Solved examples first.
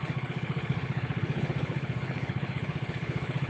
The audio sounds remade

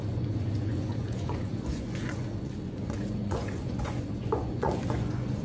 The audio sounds remade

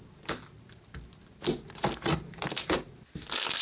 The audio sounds recorded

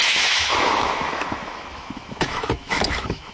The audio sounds remade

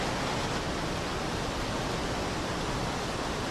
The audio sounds remade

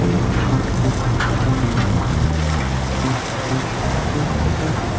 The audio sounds recorded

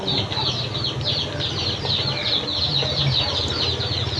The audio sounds recorded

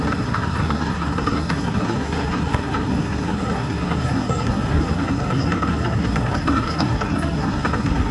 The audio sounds remade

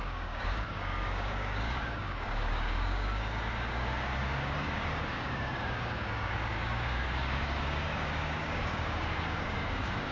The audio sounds remade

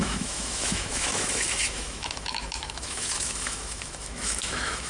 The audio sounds remade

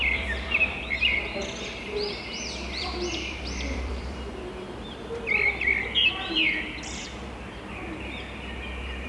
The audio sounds remade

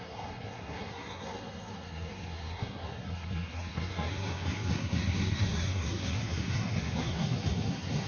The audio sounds remade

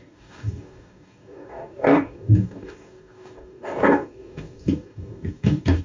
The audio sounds remade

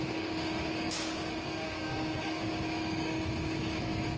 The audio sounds remade